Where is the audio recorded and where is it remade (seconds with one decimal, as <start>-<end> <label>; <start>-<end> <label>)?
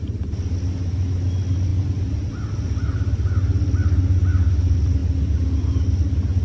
0.0-6.4 recorded